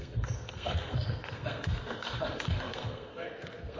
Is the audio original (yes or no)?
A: no